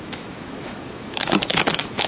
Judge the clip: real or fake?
fake